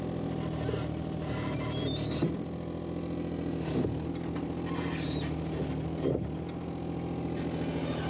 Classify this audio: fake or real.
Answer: real